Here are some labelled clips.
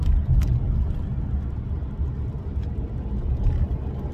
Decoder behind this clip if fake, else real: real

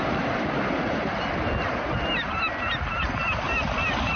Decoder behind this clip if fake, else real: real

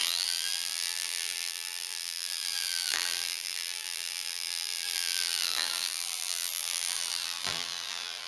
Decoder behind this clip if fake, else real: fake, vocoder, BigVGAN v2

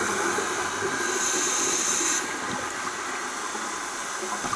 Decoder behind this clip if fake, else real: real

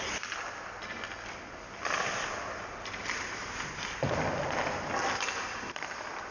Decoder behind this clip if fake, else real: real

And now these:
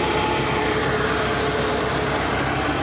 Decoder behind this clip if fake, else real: real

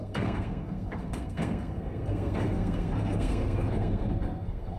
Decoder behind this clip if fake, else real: fake, codec, SNAC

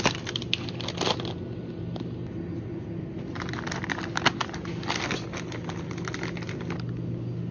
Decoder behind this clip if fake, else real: real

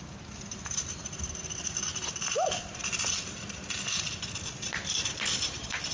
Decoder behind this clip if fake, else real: real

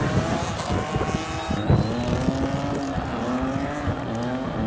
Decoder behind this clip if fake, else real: real